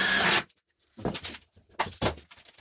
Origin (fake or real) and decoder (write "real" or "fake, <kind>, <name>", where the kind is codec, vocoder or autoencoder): real